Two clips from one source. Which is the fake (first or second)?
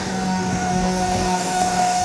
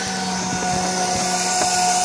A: first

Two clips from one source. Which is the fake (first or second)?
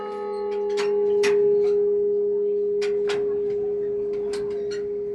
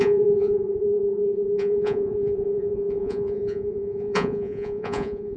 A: second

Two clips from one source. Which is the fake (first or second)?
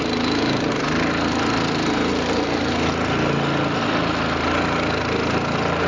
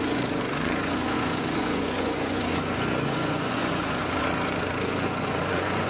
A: second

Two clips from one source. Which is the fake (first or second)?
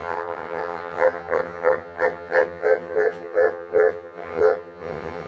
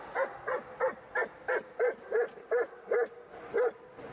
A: first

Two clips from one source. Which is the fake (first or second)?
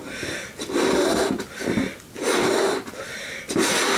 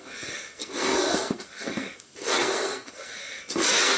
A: second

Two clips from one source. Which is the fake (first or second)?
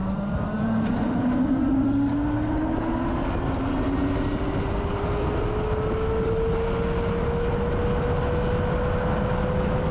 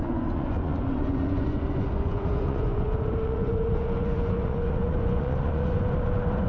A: second